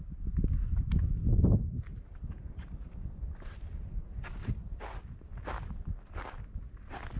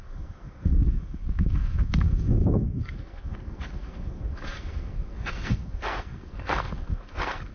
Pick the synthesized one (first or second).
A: second